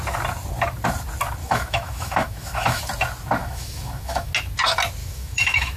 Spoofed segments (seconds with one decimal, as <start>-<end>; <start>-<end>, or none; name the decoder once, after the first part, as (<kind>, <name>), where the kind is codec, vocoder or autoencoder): 1.4-2.8 (autoencoder, DAC-VAE); 3.4-4.3; 5.0-5.8